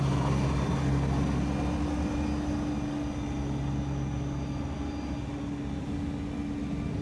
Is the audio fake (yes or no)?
no